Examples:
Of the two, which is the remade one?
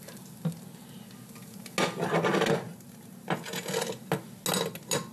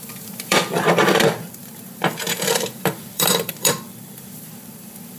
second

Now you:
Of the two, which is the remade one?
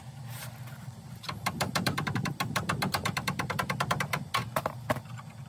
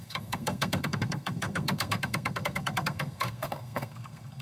second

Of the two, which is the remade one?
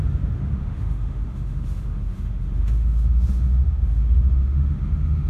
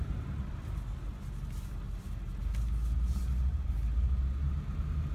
first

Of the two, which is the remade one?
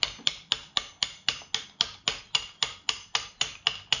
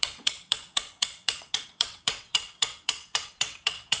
second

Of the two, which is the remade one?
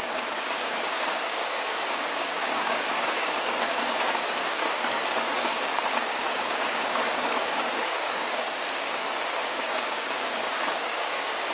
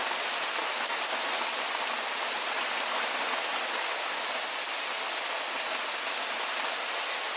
first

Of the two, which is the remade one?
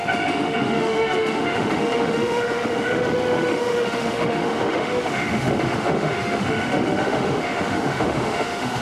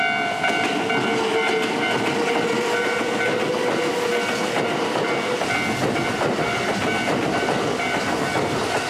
first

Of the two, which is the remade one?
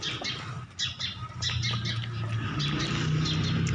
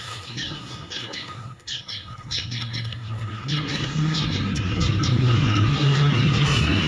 second